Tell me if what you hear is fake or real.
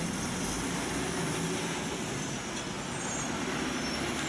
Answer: real